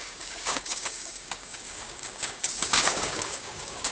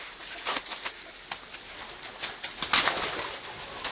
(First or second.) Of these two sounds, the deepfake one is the first